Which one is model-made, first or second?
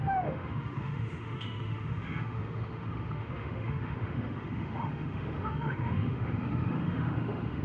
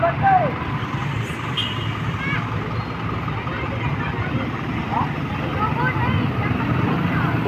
first